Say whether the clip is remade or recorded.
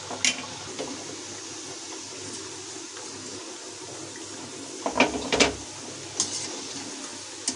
recorded